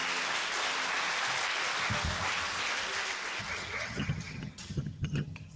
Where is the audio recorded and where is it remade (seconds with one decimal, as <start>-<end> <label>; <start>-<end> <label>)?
0.0-3.4 recorded; 3.4-5.6 remade